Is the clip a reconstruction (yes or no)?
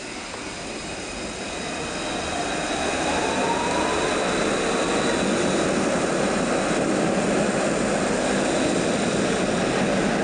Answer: no